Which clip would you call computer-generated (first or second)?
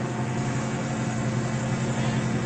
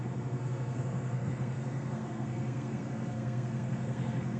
second